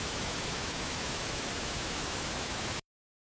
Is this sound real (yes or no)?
no